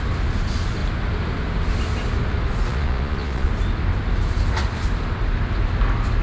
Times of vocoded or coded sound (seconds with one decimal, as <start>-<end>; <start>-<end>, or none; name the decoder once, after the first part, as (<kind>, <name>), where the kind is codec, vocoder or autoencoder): 2.7-3.5 (vocoder, Vocos)